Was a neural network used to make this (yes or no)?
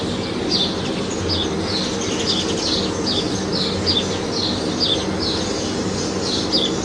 no